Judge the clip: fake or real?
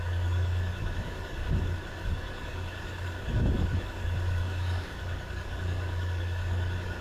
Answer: fake